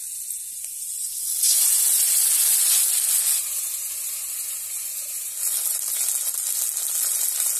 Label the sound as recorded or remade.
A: recorded